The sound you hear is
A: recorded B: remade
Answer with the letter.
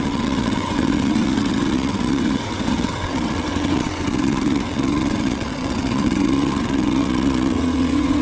B